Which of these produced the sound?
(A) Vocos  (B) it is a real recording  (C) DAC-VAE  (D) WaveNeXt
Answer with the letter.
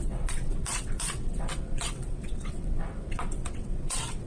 D